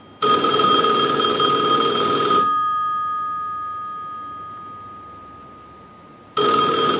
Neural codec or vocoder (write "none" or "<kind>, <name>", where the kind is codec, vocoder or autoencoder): none